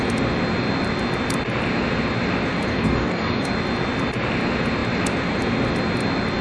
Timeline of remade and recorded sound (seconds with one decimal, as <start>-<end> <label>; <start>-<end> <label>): 0.0-2.7 recorded; 2.7-3.5 remade; 3.5-6.4 recorded